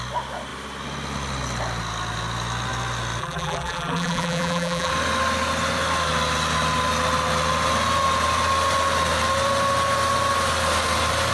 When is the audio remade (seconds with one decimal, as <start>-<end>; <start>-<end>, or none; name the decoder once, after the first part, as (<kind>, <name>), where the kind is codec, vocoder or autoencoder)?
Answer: 3.2-4.9 (vocoder, BigVGAN v2)